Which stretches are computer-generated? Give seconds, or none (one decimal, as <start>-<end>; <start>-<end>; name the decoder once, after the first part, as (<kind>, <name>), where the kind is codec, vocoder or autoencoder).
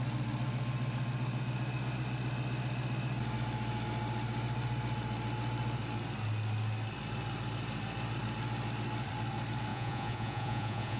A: 9.7-11.0 (vocoder, Vocos)